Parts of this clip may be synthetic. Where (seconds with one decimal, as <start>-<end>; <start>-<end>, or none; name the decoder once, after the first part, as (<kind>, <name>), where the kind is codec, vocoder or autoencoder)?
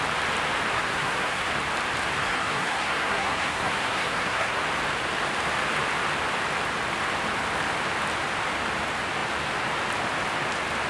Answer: 0.7-1.5 (codec, SNAC); 2.2-4.6